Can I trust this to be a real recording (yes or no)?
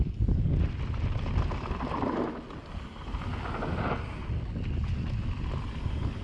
yes